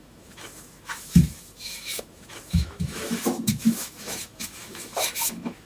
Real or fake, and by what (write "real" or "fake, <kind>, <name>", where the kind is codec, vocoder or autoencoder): fake, autoencoder, DAC-VAE